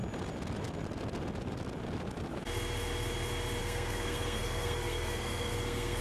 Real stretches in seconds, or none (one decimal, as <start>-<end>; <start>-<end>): 0.0-3.6